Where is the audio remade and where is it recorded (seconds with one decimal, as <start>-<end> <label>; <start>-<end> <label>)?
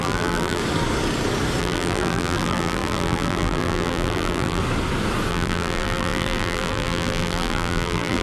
0.0-0.6 remade; 0.6-1.6 recorded; 1.6-4.6 remade; 4.6-5.3 recorded; 5.3-8.2 remade